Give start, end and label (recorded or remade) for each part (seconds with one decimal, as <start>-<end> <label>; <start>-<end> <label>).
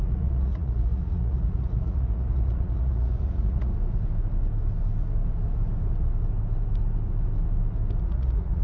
0.0-3.7 remade; 3.7-8.0 recorded; 8.0-8.6 remade